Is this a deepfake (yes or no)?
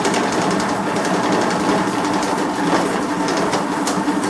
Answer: no